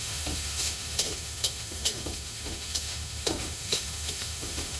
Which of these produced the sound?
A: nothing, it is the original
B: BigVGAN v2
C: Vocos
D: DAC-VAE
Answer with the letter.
D